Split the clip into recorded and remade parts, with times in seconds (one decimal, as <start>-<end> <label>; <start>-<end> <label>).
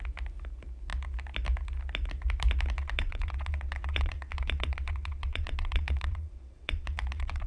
0.0-2.8 recorded; 2.8-7.5 remade